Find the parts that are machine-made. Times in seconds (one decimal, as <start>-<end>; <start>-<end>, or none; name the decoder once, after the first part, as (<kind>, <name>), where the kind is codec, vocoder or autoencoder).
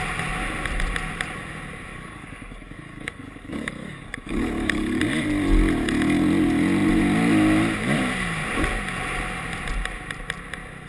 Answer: 1.9-5.0 (codec, DAC)